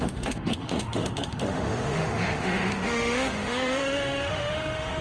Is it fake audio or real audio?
fake